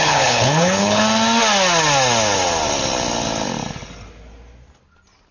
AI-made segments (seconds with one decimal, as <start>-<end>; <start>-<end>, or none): 0.0-1.0